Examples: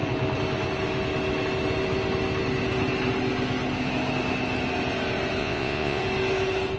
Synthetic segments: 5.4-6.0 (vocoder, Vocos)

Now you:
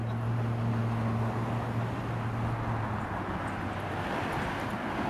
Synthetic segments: none

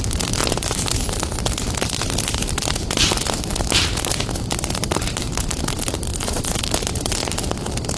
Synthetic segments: 6.1-6.6 (vocoder, Vocos)

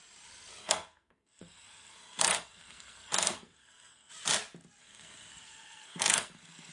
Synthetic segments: 0.6-4.1 (codec, SNAC); 4.8-6.7

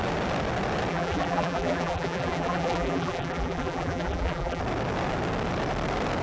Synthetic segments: 0.9-4.6 (vocoder, BigVGAN v2)